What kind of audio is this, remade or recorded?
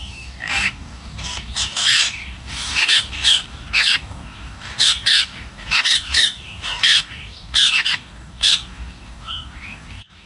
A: remade